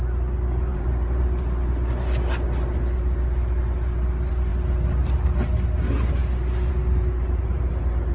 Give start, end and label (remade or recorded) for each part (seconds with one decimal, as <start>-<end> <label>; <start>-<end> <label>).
0.0-0.7 recorded; 0.7-1.4 remade; 1.4-8.1 recorded